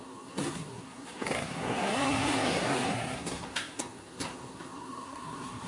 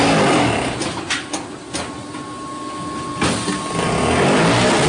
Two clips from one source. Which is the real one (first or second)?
second